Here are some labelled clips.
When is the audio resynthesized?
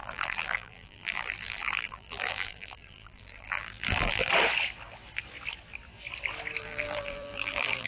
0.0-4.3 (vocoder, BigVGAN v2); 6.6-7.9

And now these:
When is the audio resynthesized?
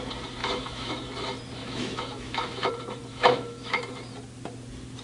0.4-0.9 (autoencoder, DAC-VAE); 1.6-2.7; 3.1-3.8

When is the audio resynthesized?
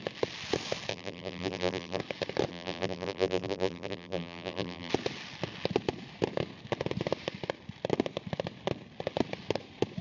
0.9-2.0 (vocoder, BigVGAN v2); 2.5-4.9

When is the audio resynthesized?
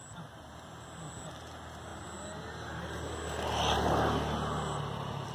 none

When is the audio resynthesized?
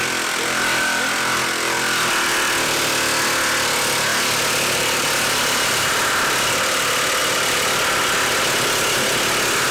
4.1-6.2 (vocoder, BigVGAN v2); 7.2-8.4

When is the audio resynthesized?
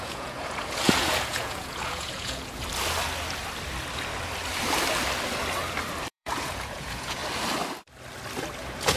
0.0-2.6 (vocoder, Vocos); 6.1-7.2; 8.6-9.0